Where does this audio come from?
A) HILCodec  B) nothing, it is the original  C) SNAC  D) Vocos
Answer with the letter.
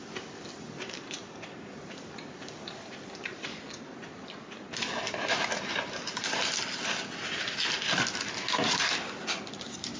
B